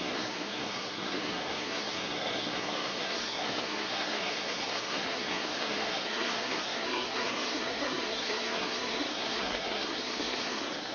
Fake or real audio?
fake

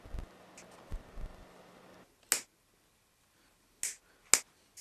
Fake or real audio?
real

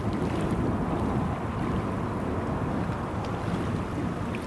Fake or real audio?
real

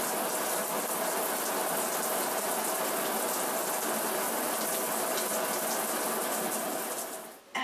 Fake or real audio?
real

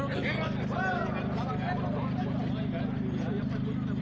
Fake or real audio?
real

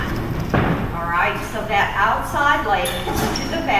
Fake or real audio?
real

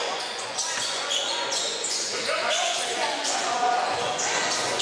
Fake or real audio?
fake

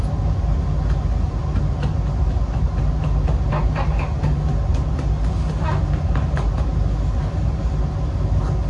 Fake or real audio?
real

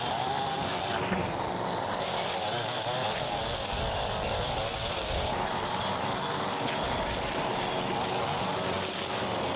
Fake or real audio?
real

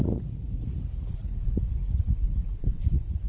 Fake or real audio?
fake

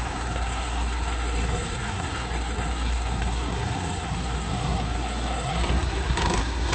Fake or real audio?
fake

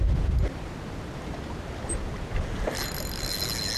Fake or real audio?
real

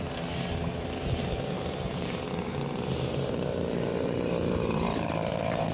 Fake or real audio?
fake